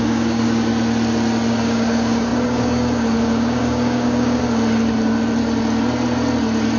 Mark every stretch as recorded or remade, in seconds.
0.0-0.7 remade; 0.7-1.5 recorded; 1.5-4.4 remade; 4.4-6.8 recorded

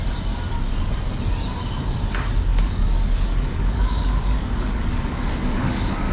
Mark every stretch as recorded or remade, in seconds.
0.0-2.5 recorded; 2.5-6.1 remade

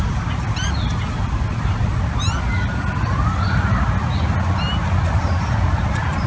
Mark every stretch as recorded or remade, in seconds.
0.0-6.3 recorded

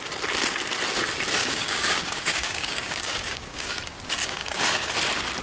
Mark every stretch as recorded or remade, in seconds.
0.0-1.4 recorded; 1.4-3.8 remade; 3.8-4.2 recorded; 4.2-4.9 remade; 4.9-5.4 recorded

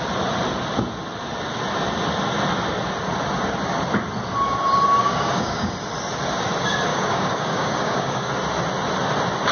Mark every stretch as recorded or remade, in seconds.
0.0-5.0 recorded; 5.0-5.7 remade; 5.7-6.9 recorded; 6.9-8.3 remade; 8.3-9.5 recorded

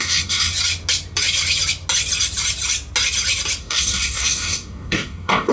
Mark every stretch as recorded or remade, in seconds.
0.0-0.5 remade; 0.5-3.6 recorded; 3.6-5.5 remade

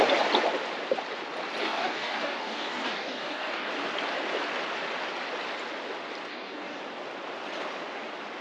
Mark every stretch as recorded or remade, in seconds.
0.0-1.6 recorded; 1.6-3.7 remade; 3.7-6.3 recorded; 6.3-6.8 remade; 6.8-8.4 recorded

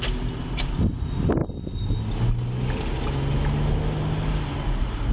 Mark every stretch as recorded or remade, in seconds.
0.0-5.1 recorded